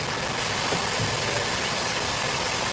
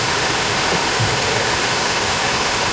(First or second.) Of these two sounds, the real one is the first